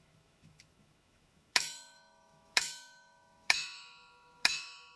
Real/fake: fake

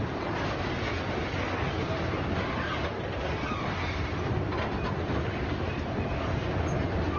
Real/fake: real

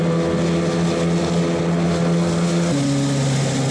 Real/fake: real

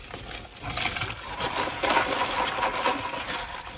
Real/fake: real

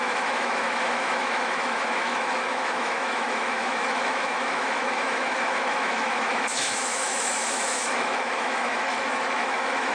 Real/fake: fake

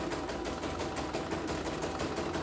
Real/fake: real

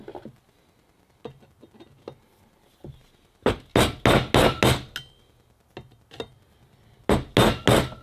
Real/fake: real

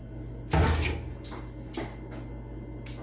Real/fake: real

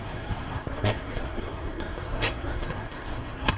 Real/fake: fake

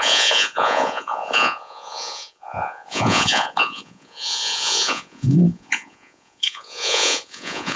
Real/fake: fake